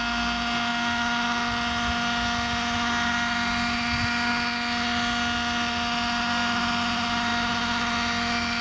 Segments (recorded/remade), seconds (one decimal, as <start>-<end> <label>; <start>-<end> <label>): 0.0-8.6 recorded